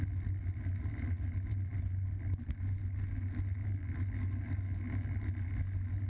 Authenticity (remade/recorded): recorded